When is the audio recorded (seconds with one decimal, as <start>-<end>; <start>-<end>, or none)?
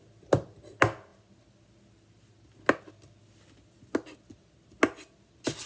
0.0-5.7